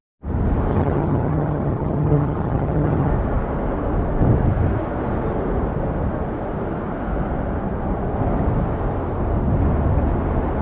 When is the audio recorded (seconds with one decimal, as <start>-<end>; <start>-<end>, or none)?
0.0-0.7; 3.1-10.6